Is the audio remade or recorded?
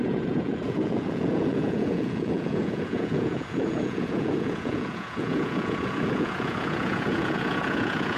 remade